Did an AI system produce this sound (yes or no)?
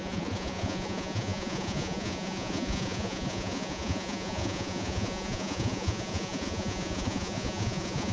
yes